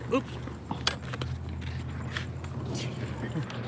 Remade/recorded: recorded